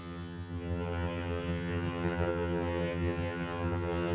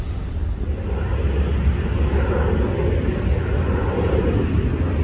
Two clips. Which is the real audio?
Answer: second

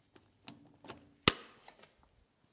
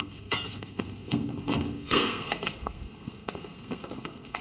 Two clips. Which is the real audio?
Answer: first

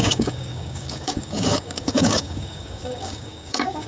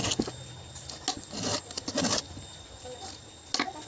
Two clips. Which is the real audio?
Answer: second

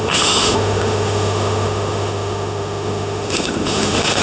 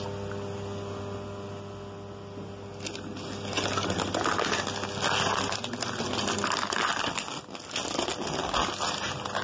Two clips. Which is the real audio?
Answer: second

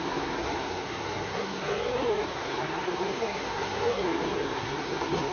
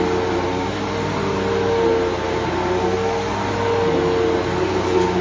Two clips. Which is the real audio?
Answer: second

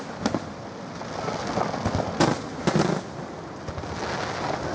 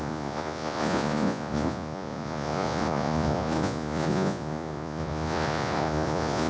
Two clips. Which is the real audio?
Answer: first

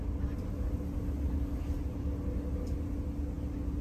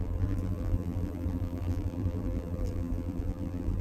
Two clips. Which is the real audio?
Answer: first